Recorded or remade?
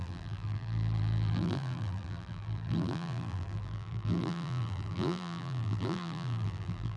remade